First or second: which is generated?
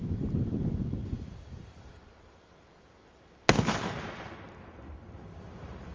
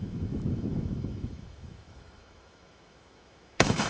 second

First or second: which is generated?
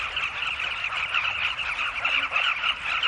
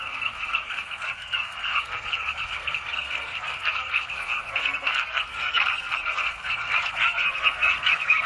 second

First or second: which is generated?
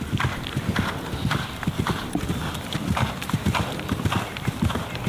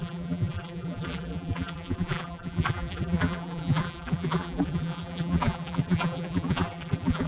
second